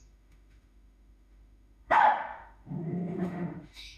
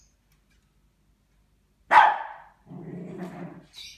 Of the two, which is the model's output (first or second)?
first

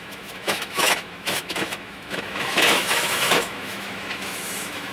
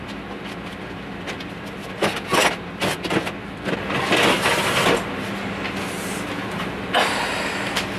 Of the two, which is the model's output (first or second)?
first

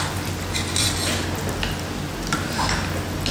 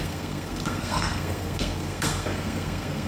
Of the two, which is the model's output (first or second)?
second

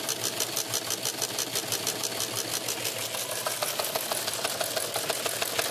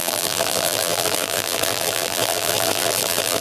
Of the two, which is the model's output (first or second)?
second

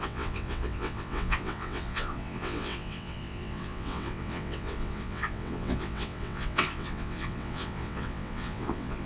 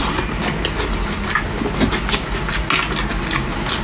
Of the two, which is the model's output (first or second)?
first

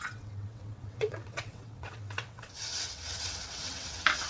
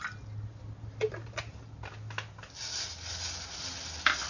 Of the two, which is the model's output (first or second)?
first